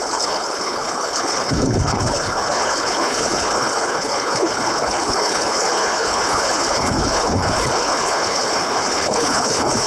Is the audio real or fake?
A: fake